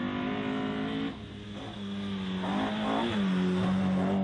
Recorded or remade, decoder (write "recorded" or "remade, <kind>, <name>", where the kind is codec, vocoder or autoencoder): recorded